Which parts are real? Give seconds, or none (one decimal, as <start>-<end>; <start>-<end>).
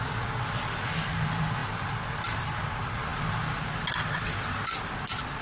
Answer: 0.0-5.4